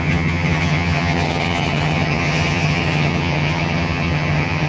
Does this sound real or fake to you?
fake